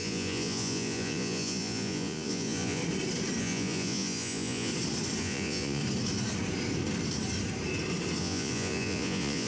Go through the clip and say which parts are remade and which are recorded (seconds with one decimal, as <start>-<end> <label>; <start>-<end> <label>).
0.0-2.8 remade; 2.8-3.4 recorded; 3.4-4.7 remade; 4.7-5.2 recorded; 5.2-5.8 remade; 5.8-8.2 recorded; 8.2-9.5 remade